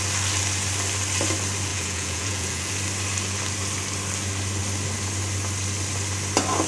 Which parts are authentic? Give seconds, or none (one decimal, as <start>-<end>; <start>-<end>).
0.0-1.7; 2.7-6.7